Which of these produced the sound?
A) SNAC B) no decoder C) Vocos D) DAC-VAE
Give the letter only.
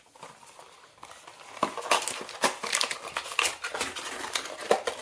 B